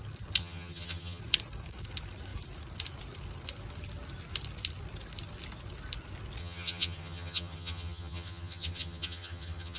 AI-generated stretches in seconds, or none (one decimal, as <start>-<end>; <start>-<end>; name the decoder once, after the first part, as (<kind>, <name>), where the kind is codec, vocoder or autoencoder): 0.4-1.2 (vocoder, HiFi-GAN); 6.4-9.8

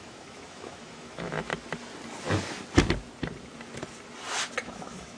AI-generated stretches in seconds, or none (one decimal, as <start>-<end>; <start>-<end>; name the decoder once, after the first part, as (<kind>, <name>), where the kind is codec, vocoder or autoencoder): 0.0-1.5 (autoencoder, DAC-VAE); 4.6-5.2

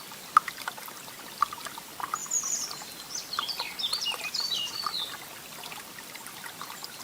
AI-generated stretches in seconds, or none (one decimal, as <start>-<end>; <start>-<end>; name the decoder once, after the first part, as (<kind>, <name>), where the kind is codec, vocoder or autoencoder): none